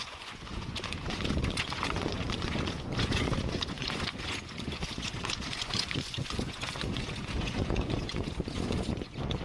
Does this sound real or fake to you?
fake